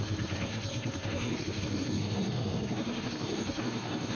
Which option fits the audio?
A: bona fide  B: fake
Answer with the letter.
B